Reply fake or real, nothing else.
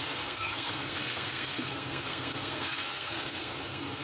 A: fake